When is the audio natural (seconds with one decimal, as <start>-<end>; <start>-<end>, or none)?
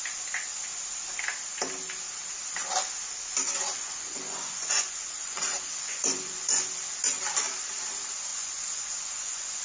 0.0-3.4; 6.7-8.3